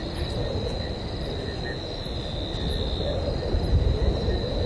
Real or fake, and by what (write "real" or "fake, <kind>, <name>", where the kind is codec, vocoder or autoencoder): real